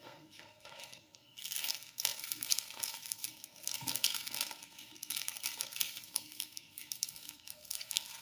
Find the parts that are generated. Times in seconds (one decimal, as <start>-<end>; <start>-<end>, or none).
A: 0.0-8.2